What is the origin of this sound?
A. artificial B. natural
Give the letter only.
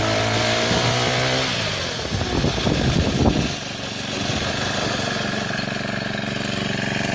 B